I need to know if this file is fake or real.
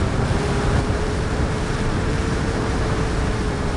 fake